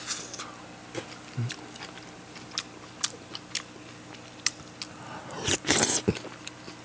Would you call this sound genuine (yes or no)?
yes